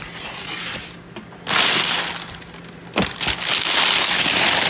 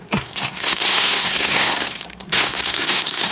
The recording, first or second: first